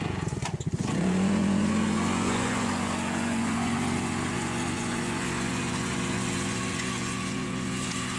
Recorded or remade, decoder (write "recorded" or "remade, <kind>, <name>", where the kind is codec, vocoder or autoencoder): remade, vocoder, Vocos